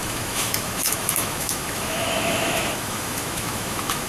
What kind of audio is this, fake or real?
fake